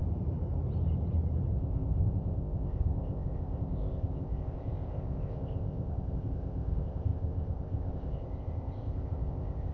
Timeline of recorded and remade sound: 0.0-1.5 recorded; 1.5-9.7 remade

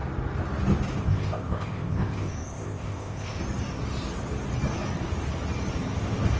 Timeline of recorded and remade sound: 0.0-1.0 recorded; 1.0-3.4 remade; 3.4-6.4 recorded

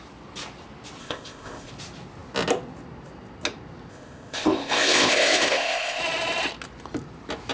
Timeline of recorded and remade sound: 0.0-1.0 recorded; 1.0-1.7 remade; 1.7-3.9 recorded; 3.9-6.0 remade; 6.0-7.5 recorded

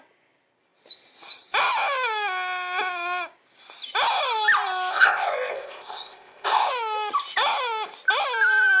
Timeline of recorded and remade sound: 0.0-4.9 recorded; 4.9-6.7 remade; 6.7-8.8 recorded